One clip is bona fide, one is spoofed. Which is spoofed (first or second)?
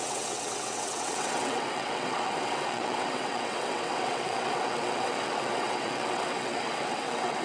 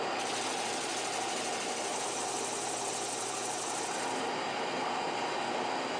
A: first